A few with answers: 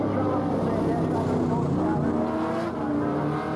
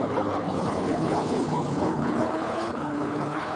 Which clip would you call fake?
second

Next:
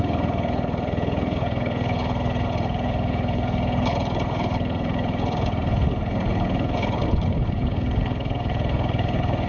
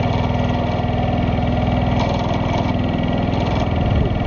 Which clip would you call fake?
first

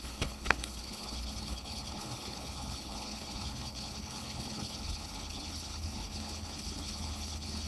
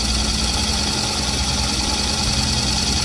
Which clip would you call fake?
first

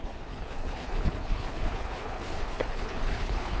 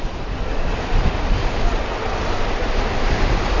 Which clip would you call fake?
first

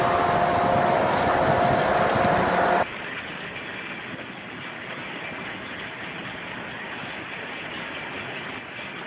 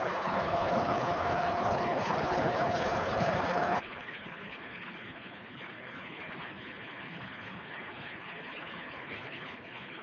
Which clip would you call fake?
second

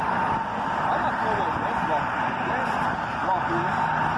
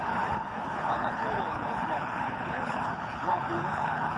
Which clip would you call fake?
second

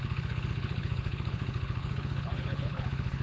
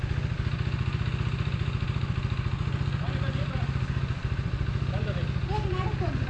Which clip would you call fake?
first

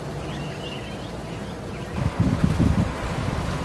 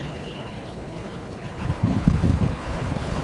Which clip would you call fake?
second